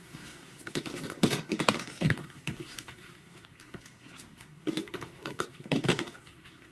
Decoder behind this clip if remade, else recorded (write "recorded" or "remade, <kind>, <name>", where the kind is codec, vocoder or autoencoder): remade, codec, SNAC